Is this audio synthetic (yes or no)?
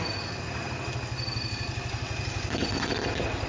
no